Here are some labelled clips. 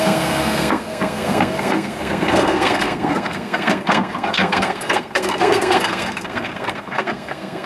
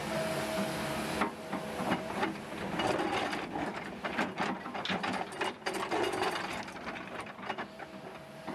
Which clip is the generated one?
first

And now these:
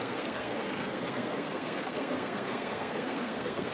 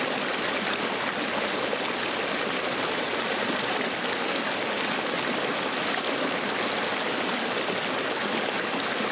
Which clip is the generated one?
first